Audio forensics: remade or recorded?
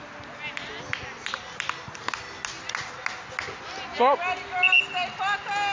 recorded